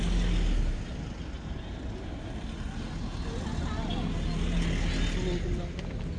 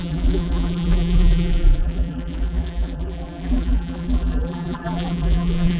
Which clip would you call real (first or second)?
first